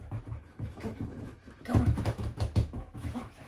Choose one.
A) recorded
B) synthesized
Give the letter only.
B